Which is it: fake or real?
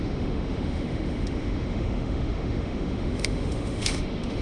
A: fake